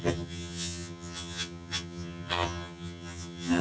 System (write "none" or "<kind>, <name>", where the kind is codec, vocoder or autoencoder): vocoder, HiFi-GAN